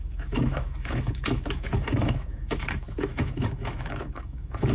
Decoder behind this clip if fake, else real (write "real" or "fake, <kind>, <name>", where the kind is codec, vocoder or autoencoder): fake, autoencoder, DAC-VAE